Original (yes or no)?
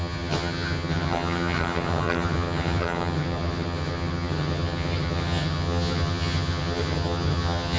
no